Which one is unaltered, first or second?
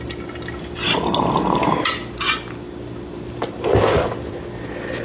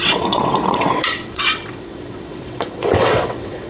first